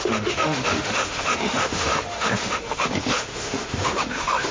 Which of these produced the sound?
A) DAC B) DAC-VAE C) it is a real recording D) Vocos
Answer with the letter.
B